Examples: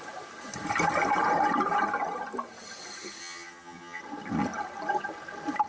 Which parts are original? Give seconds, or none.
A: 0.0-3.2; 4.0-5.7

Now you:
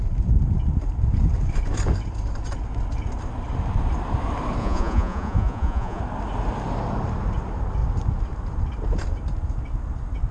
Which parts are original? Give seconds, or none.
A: 0.0-4.6; 6.0-10.3

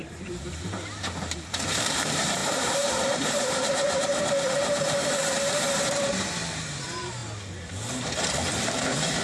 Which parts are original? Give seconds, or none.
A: 7.2-8.3

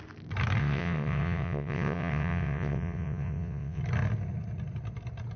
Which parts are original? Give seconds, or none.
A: 0.0-0.6; 3.8-5.4